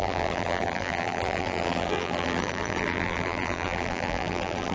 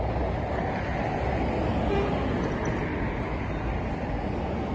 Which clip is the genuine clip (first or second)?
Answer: second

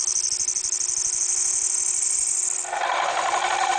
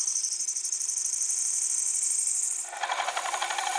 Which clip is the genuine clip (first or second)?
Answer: first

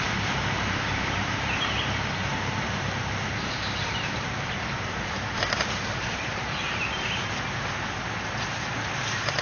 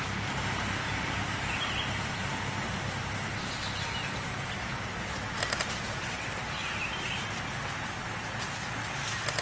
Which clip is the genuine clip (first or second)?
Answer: second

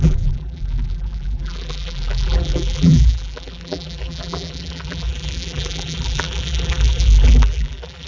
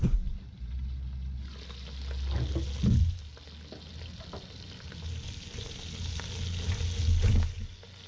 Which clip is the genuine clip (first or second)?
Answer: second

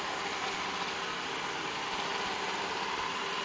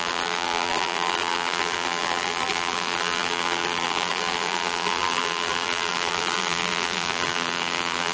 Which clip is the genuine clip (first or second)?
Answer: first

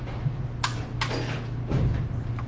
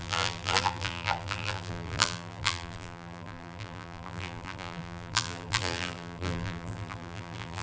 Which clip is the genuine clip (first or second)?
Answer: first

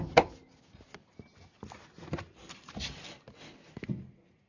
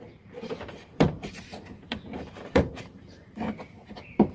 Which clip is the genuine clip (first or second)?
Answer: first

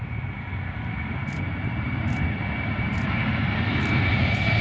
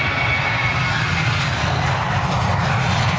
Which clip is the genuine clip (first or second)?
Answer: second